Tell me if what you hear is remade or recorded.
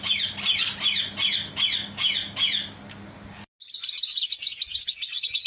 recorded